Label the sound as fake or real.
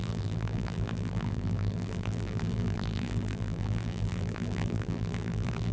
fake